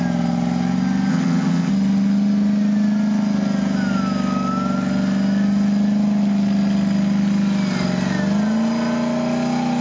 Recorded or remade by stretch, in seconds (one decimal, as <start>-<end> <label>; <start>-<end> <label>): 0.0-1.1 recorded; 1.1-1.7 remade; 1.7-9.8 recorded